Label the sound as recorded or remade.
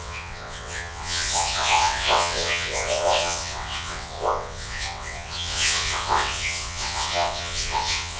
remade